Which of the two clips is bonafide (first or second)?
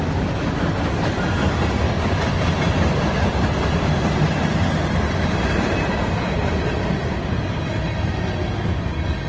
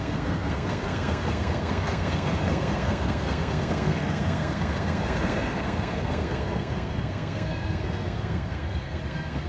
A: first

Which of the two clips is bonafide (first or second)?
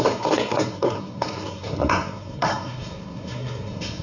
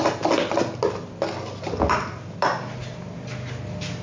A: second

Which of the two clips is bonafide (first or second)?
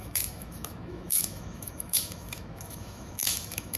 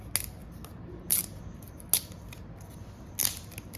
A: second